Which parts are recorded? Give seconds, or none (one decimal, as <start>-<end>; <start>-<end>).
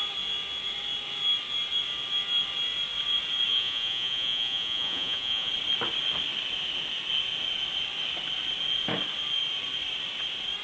0.0-3.5; 5.5-10.6